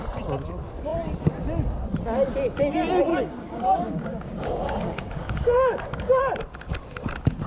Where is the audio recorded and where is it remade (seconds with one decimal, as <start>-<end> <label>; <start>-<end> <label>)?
0.0-3.1 recorded; 3.1-6.2 remade; 6.2-7.5 recorded